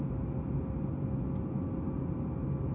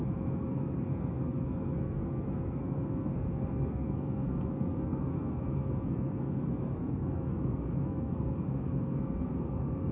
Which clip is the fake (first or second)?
second